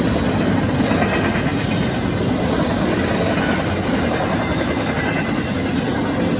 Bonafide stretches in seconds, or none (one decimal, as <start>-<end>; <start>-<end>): 0.0-6.4